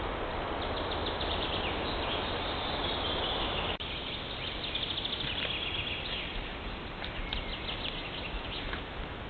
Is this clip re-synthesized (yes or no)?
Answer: no